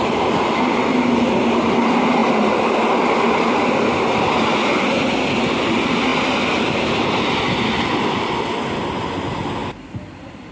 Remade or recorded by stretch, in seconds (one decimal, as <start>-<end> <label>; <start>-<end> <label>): 0.0-9.6 recorded; 9.6-10.5 remade